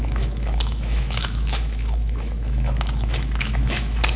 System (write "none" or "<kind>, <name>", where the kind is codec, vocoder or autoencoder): autoencoder, DAC-VAE